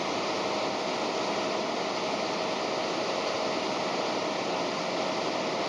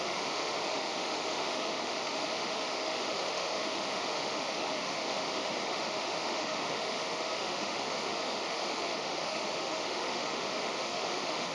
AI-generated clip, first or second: second